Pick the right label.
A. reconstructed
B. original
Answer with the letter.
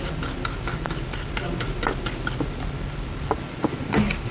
B